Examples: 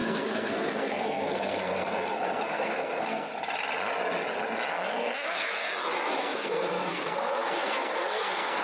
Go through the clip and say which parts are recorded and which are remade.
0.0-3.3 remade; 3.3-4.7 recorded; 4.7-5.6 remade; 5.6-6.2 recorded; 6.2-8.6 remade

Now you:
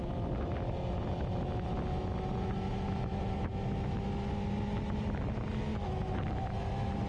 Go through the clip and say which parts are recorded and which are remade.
0.0-7.1 recorded

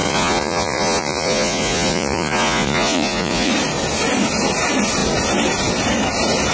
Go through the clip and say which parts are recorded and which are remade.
0.0-3.5 remade; 3.5-6.5 recorded